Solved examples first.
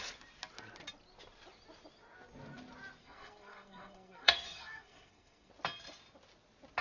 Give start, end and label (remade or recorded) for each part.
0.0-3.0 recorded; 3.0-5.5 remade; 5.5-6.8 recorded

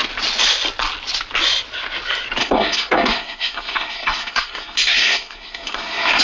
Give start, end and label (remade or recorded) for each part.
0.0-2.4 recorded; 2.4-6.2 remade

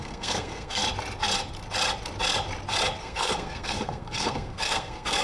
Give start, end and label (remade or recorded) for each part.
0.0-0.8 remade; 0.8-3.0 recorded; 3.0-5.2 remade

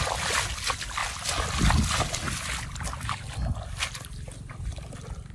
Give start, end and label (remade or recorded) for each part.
0.0-5.3 recorded